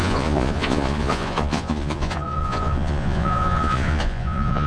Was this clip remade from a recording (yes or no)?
yes